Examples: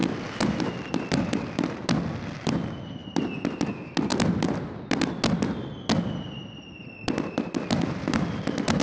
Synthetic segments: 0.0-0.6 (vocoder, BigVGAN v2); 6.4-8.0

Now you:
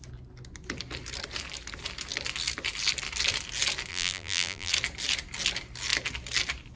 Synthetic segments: 3.9-4.7 (vocoder, BigVGAN v2)

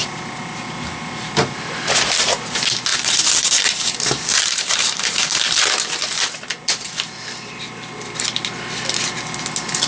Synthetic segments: 0.0-0.6 (vocoder, BigVGAN v2); 2.9-5.6

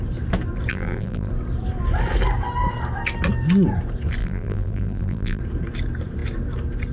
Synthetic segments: 0.7-1.3 (vocoder, BigVGAN v2); 4.2-5.4

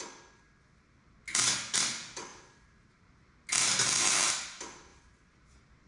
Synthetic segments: 2.3-3.0 (vocoder, BigVGAN v2); 3.6-4.1; 4.9-5.4